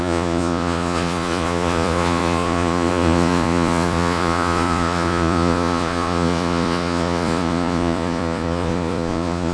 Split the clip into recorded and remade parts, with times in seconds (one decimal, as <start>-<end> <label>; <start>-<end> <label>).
0.0-9.5 remade